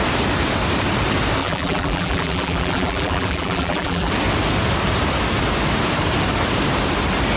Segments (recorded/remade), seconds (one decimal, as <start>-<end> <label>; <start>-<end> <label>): 0.0-1.4 recorded; 1.4-4.1 remade; 4.1-7.4 recorded